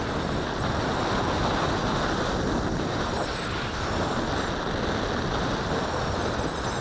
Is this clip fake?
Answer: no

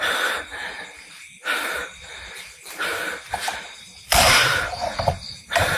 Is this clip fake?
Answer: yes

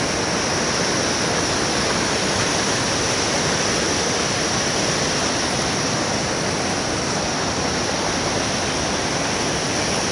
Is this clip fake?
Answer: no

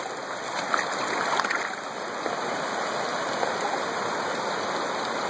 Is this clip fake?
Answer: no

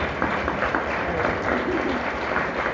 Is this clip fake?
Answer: no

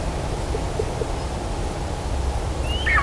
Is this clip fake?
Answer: no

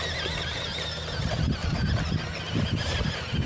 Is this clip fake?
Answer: no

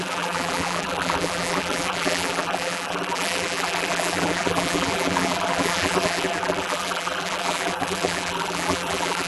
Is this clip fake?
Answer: yes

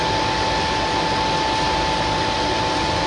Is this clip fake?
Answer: no